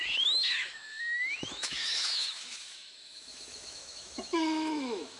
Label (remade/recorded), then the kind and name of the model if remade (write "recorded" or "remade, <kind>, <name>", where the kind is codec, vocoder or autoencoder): remade, autoencoder, DAC-VAE